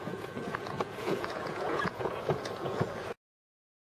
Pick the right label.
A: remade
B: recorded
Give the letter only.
A